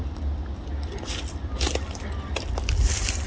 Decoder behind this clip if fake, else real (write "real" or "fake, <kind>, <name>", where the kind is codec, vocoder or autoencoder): real